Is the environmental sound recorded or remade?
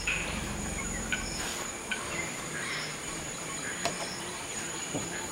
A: remade